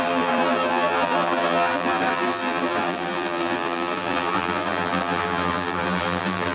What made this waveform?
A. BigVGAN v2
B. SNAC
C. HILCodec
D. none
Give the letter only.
A